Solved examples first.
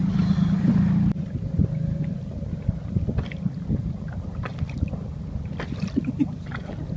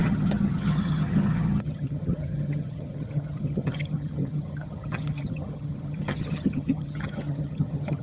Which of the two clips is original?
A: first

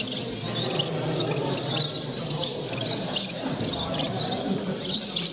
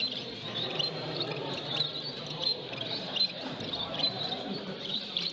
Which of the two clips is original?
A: first